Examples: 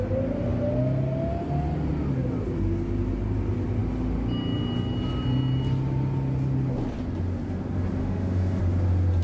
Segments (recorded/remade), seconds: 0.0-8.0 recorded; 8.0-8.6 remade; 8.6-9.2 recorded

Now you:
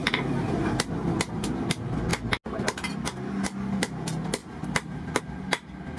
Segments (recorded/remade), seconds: 0.0-1.3 remade; 1.3-4.4 recorded; 4.4-5.2 remade; 5.2-6.0 recorded